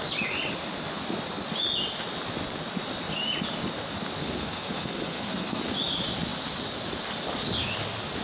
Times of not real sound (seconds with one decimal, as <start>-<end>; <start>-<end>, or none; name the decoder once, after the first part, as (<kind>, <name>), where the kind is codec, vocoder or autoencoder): 4.2-5.6 (codec, SNAC)